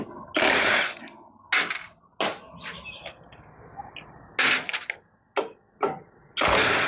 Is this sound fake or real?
real